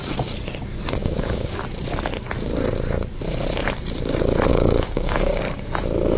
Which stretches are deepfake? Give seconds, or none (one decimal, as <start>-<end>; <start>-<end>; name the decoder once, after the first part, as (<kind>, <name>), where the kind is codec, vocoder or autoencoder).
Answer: 1.0-1.6 (codec, DAC); 4.5-5.4